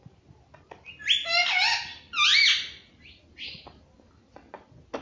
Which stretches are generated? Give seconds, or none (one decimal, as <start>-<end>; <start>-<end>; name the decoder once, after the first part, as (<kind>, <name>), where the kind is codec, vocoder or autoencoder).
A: none

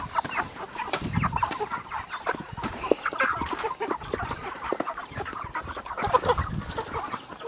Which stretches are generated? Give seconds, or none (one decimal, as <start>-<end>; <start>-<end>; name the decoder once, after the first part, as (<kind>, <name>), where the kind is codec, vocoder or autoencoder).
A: 0.5-1.0 (vocoder, BigVGAN v2); 3.3-3.9

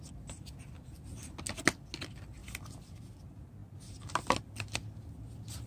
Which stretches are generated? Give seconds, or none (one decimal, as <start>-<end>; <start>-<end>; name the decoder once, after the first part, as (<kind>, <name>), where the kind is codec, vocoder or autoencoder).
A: none

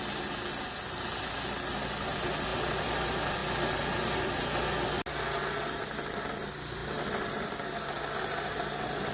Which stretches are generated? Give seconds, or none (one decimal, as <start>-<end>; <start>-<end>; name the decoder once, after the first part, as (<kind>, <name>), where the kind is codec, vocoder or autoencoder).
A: none

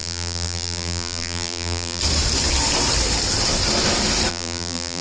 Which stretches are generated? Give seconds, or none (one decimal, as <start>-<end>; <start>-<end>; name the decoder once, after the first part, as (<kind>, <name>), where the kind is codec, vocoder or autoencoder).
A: 0.0-2.0 (vocoder, BigVGAN v2); 4.3-5.0

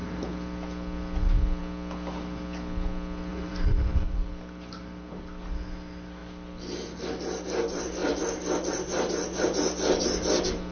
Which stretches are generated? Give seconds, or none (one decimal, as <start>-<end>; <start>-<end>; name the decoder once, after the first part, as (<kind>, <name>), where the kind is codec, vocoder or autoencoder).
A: 3.3-4.3 (vocoder, BigVGAN v2)

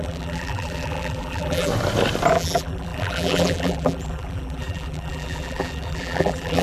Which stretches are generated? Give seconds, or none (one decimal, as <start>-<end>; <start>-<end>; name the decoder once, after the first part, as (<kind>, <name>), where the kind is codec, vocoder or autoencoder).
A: 0.0-1.7 (vocoder, BigVGAN v2); 2.3-6.6

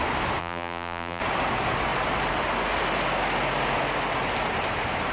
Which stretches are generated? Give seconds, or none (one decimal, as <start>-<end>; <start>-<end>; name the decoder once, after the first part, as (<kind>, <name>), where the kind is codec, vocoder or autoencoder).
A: 0.4-1.2 (vocoder, BigVGAN v2)